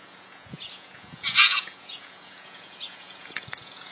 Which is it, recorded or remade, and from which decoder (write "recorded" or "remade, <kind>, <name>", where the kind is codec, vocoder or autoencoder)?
remade, vocoder, Vocos